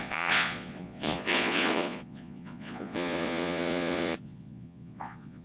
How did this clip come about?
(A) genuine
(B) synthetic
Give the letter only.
B